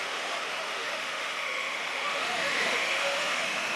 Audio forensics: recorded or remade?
remade